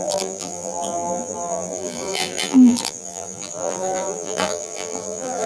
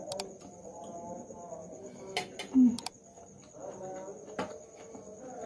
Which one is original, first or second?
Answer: second